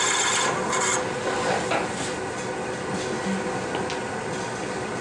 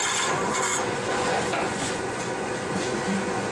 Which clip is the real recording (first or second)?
first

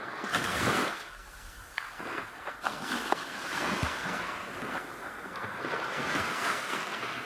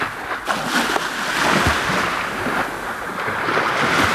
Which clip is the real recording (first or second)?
second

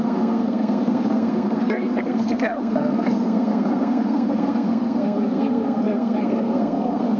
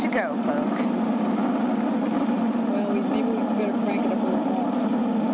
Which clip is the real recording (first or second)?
second